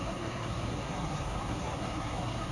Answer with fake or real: fake